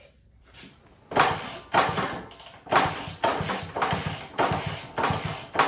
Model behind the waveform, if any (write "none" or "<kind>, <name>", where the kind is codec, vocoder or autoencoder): none